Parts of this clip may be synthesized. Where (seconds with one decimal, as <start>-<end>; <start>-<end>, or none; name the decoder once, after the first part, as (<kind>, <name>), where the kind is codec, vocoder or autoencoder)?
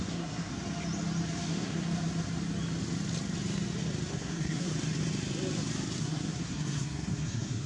0.0-0.5 (codec, SNAC); 1.5-1.9; 4.1-4.7; 6.0-7.7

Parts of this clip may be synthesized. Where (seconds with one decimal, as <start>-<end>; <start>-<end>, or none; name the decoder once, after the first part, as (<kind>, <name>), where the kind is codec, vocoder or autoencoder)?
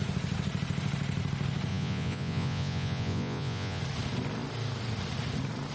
1.7-3.8 (vocoder, Vocos)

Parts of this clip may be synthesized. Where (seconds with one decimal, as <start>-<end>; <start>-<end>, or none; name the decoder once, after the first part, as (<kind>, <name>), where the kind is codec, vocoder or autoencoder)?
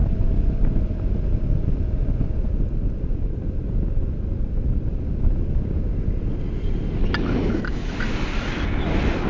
none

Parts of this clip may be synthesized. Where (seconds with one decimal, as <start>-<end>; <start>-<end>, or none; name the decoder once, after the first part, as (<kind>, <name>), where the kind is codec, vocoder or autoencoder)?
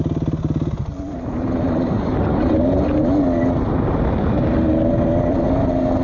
none